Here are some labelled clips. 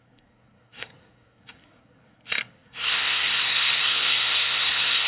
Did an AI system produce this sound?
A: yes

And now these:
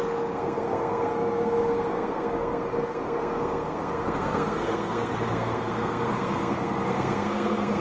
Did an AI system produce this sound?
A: yes